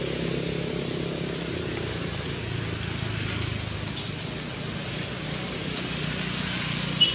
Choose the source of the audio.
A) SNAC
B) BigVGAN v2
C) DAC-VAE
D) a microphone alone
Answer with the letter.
D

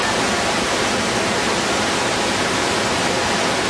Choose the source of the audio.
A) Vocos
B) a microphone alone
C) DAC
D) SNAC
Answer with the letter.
B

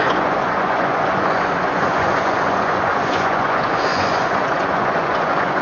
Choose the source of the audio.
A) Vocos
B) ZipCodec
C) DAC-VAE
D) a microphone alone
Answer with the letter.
A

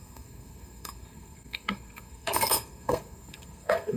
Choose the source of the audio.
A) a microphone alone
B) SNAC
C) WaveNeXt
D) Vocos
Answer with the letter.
B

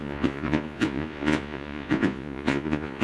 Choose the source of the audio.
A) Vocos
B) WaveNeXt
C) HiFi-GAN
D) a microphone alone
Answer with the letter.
A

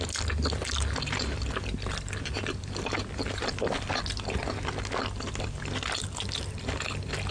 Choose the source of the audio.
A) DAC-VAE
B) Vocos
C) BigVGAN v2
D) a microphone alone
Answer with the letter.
D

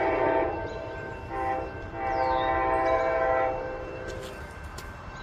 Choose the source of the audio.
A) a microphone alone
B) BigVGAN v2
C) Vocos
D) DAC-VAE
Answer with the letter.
A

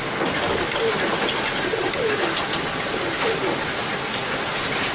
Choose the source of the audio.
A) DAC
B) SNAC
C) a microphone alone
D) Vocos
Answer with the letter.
C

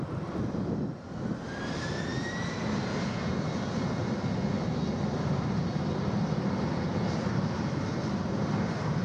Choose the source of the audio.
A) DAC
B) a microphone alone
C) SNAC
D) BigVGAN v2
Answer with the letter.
B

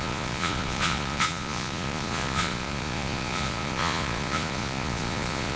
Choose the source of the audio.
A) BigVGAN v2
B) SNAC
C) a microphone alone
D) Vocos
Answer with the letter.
D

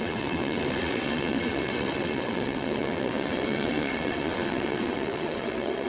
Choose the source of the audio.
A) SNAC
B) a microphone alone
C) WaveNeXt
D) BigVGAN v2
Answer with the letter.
C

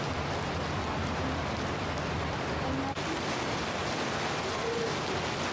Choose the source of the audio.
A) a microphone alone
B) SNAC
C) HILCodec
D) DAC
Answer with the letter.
A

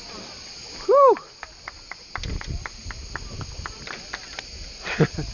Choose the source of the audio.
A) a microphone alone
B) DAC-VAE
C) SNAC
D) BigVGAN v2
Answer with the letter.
A